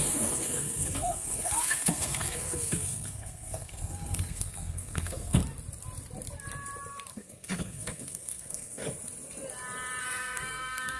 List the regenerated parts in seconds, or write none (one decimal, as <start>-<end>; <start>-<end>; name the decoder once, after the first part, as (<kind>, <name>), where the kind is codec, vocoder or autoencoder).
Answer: 0.0-5.4 (codec, SNAC); 7.1-8.8; 10.0-11.0